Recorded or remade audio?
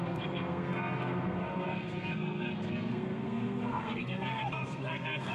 remade